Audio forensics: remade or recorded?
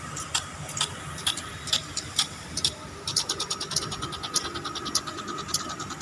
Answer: recorded